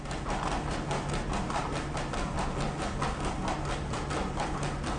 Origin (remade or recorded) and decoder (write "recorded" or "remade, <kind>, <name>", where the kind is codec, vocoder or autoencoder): recorded